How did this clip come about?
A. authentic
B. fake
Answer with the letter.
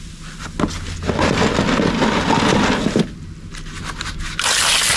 A